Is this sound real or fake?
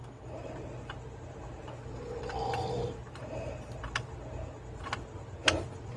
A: real